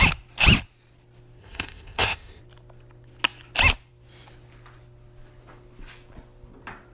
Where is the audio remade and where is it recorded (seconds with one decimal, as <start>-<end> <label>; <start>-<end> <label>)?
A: 0.0-1.4 recorded; 1.4-2.4 remade; 2.4-6.9 recorded